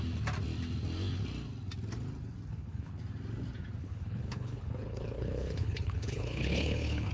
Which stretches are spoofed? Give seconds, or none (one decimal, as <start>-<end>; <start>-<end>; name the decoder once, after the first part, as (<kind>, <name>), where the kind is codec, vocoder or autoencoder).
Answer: 2.5-3.0 (codec, HILCodec); 3.8-7.1